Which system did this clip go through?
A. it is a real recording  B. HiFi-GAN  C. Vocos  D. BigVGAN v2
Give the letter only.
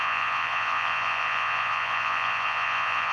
C